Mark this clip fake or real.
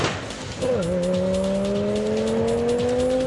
real